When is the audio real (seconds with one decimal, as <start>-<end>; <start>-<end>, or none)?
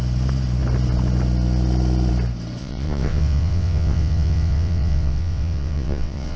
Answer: 0.0-2.6